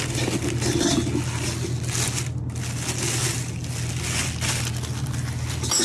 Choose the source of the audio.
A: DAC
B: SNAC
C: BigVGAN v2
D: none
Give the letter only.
D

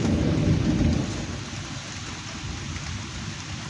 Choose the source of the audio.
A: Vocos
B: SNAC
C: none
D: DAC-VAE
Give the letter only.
C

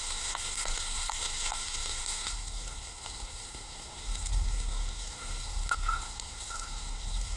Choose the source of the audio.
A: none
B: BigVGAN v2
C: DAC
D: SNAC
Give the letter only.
D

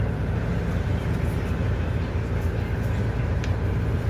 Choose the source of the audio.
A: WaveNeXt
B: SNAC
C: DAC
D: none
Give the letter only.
D